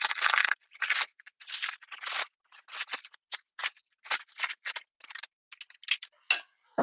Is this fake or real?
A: real